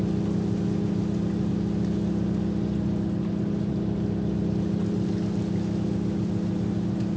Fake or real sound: real